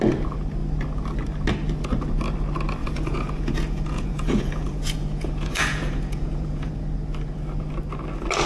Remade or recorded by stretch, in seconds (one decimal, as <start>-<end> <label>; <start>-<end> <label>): 0.0-2.8 recorded; 2.8-6.7 remade; 6.7-8.5 recorded